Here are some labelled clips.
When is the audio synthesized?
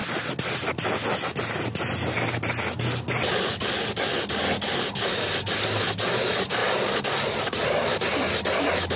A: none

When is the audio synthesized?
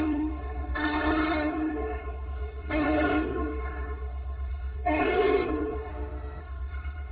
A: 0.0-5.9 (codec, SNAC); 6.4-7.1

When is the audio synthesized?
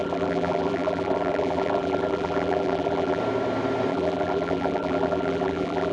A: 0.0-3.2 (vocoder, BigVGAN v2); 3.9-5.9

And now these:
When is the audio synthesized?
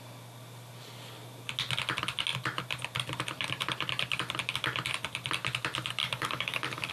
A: 6.0-6.9 (codec, DAC)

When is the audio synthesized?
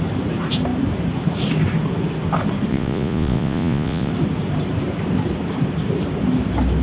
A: 2.7-4.1 (vocoder, Vocos)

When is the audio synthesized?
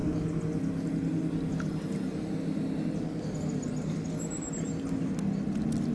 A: none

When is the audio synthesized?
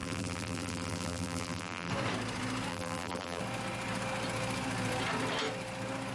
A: 0.0-1.9 (vocoder, BigVGAN v2); 2.7-3.4